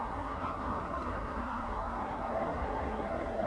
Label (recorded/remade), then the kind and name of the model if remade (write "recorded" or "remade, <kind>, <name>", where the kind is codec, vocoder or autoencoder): remade, codec, SNAC